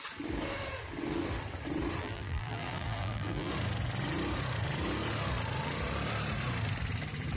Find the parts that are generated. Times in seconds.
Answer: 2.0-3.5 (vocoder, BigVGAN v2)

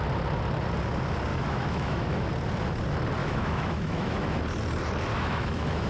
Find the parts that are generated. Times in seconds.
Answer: 1.3-2.3 (autoencoder, DAC-VAE); 3.2-4.4; 5.1-5.9

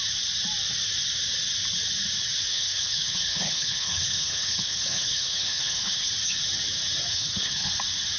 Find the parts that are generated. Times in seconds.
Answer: 2.5-6.1 (codec, HILCodec); 7.1-7.7

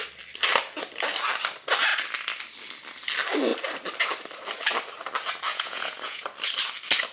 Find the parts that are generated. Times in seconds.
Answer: 5.5-6.2 (vocoder, Vocos)